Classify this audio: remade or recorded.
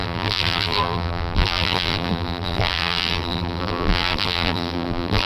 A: remade